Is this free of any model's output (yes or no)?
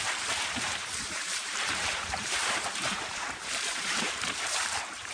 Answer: no